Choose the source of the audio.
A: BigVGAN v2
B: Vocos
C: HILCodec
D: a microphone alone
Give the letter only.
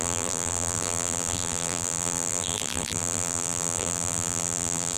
A